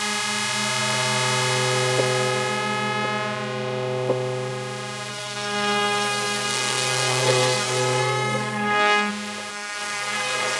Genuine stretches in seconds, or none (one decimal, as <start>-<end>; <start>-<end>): 0.0-5.1; 9.1-9.5